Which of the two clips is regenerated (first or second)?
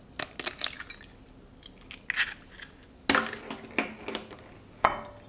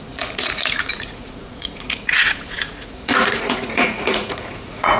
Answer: second